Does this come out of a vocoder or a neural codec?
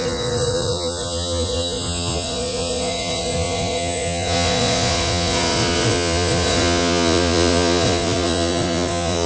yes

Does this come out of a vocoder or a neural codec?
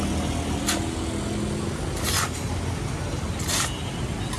no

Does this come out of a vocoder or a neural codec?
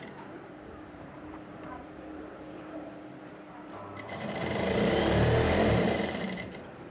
yes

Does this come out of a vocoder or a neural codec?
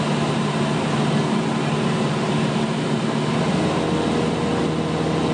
no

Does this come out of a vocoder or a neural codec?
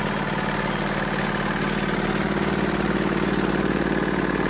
no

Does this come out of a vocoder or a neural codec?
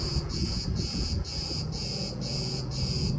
yes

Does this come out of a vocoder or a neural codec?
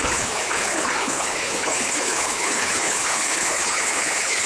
yes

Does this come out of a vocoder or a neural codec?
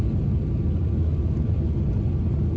no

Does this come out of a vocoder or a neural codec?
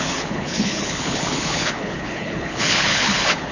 yes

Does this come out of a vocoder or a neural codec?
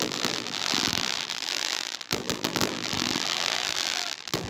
yes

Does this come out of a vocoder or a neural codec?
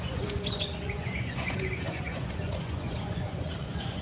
yes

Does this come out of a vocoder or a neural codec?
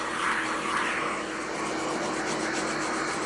no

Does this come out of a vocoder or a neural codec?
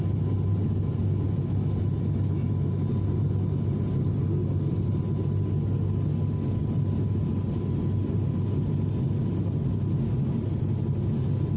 no